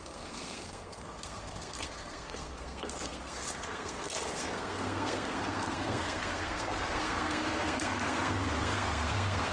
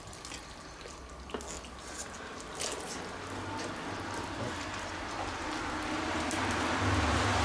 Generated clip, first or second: first